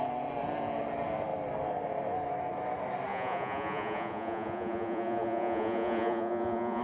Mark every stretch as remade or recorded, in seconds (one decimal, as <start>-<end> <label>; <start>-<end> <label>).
0.0-3.1 recorded; 3.1-6.8 remade